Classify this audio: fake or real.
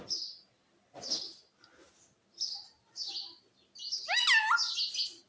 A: real